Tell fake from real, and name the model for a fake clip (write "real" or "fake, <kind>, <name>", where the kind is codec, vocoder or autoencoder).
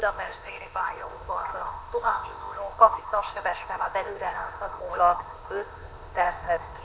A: fake, codec, ZipCodec